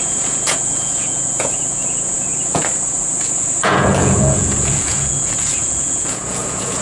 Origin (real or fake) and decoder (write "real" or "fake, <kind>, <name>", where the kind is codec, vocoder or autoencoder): fake, vocoder, Vocos